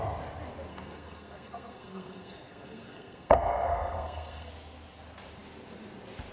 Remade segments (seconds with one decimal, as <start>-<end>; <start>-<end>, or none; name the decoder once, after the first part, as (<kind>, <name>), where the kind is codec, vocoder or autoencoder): 0.7-4.5 (codec, SNAC)